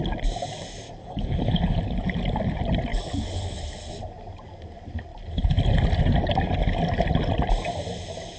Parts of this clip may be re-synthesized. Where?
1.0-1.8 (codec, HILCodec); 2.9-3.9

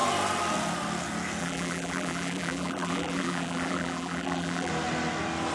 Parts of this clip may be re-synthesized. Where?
1.4-4.7 (vocoder, BigVGAN v2)

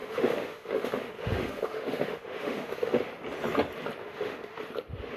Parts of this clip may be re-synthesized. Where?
0.0-3.1 (autoencoder, DAC-VAE); 4.0-4.6

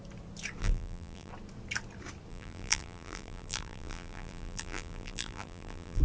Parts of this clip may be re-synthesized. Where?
0.6-1.3 (vocoder, BigVGAN v2); 2.3-6.0

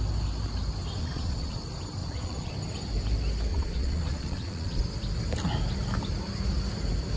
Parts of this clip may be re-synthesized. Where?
1.0-1.6 (vocoder, Vocos); 2.0-2.5; 3.5-4.8

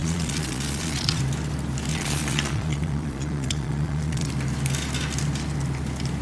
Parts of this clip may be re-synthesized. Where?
0.0-1.2 (vocoder, Vocos); 1.9-4.3

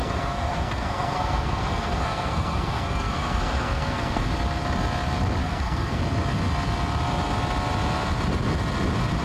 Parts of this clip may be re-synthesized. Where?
0.0-4.3 (codec, SNAC); 5.4-6.0